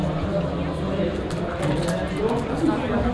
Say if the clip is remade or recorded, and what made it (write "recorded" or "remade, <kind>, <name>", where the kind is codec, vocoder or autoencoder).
recorded